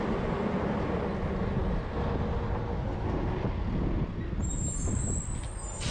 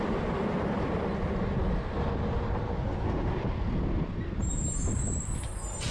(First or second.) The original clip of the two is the first